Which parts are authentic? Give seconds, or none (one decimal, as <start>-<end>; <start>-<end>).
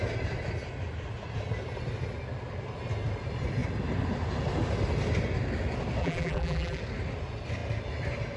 0.0-6.0; 6.8-8.4